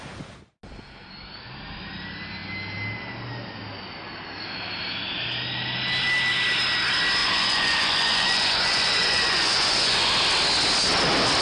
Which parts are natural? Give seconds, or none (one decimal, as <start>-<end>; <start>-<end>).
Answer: 0.0-7.2; 10.1-11.4